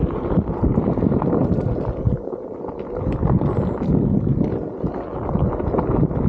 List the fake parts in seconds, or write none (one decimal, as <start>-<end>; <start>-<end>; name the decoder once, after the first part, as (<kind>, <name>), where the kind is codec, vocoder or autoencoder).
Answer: none